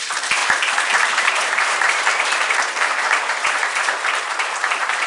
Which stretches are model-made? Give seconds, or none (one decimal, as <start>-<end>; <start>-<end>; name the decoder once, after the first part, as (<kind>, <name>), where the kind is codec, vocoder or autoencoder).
0.0-0.4 (vocoder, BigVGAN v2); 1.2-5.1